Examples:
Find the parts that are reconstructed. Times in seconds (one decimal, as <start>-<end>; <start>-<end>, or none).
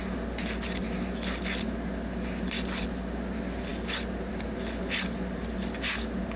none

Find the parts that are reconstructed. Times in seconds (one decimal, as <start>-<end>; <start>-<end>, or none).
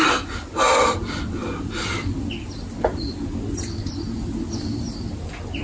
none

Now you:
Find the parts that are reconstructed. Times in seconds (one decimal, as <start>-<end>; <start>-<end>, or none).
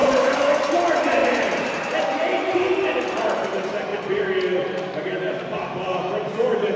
0.0-0.5; 1.2-3.2; 3.9-5.2